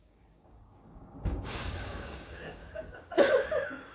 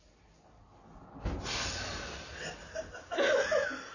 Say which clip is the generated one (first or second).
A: first